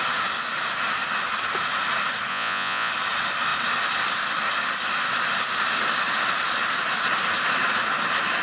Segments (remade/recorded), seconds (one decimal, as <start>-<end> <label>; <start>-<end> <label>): 0.0-2.3 recorded; 2.3-2.9 remade; 2.9-8.4 recorded